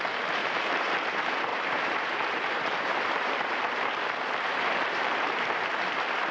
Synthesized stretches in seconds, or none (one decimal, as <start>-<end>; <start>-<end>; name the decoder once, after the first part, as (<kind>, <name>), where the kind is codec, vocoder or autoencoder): 0.4-0.9 (vocoder, BigVGAN v2); 1.5-3.8; 4.5-5.1